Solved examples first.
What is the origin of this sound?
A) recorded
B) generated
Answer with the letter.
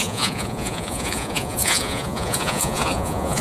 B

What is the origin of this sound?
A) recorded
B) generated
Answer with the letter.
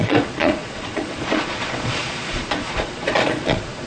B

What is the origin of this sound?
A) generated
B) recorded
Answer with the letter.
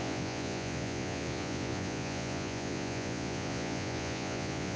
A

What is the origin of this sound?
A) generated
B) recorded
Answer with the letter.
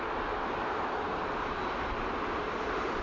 B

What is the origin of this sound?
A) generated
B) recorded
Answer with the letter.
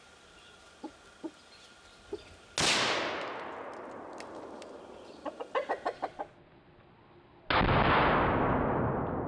B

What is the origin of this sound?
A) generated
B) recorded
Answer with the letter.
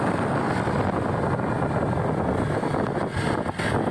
B